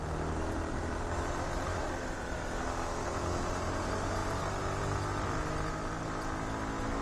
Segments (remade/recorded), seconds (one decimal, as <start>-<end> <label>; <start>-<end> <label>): 0.0-1.7 recorded; 1.7-2.3 remade; 2.3-7.0 recorded

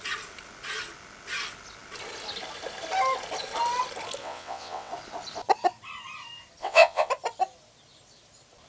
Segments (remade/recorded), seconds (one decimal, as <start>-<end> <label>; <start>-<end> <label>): 0.0-4.2 recorded; 4.2-4.9 remade; 4.9-6.6 recorded; 6.6-7.1 remade; 7.1-8.7 recorded

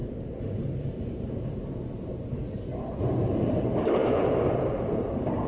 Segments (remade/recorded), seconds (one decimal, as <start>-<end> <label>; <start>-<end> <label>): 0.0-3.3 recorded; 3.3-5.5 remade

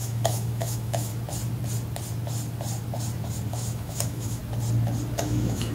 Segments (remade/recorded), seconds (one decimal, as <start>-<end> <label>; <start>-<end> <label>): 0.0-1.1 remade; 1.1-3.5 recorded; 3.5-4.4 remade; 4.4-5.2 recorded; 5.2-5.7 remade